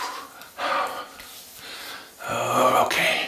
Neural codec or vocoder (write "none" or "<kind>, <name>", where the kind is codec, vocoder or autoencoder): none